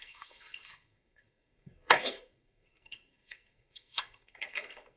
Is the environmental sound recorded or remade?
remade